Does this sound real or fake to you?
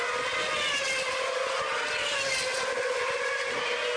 real